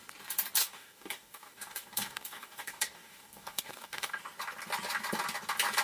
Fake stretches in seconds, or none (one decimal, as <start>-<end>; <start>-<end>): 0.6-4.1